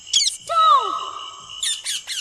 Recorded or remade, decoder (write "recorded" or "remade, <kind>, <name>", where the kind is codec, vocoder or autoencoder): recorded